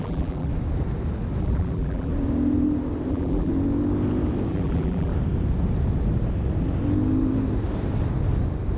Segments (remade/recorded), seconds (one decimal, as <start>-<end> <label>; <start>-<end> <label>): 0.0-0.5 remade; 0.5-1.4 recorded; 1.4-2.1 remade; 2.1-3.1 recorded; 3.1-3.5 remade; 3.5-4.5 recorded; 4.5-5.1 remade; 5.1-8.8 recorded

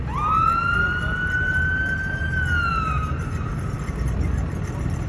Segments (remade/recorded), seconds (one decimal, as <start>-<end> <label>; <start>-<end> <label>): 0.0-2.7 recorded; 2.7-3.5 remade; 3.5-5.1 recorded

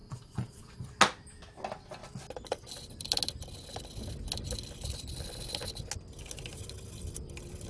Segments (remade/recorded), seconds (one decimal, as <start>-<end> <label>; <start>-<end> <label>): 0.0-0.8 remade; 0.8-7.7 recorded

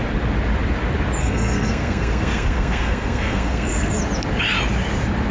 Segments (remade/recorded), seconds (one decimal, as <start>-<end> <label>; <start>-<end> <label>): 0.0-1.2 recorded; 1.2-4.0 remade; 4.0-5.3 recorded

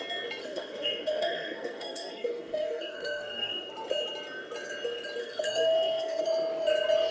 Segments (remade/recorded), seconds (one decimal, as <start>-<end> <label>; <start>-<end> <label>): 0.0-0.4 recorded; 0.4-3.7 remade; 3.7-5.2 recorded; 5.2-6.2 remade; 6.2-7.1 recorded

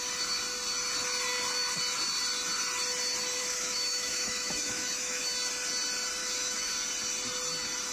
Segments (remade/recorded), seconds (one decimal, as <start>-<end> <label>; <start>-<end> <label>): 0.0-3.4 recorded; 3.4-5.3 remade; 5.3-6.2 recorded; 6.2-6.7 remade; 6.7-7.9 recorded

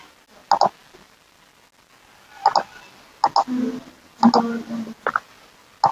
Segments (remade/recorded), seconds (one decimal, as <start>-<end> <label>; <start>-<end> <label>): 0.0-5.9 recorded

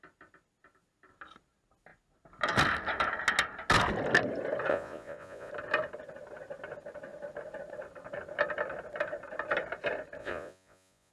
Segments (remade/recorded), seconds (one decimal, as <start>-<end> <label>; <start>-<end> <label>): 0.0-4.7 recorded; 4.7-5.5 remade; 5.5-10.2 recorded; 10.2-11.1 remade